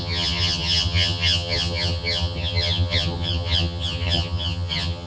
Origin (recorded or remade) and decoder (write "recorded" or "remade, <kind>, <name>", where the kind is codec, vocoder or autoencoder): remade, vocoder, HiFi-GAN